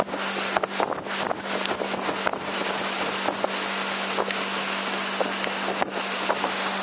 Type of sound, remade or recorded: recorded